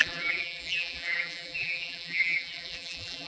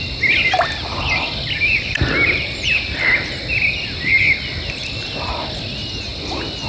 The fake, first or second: first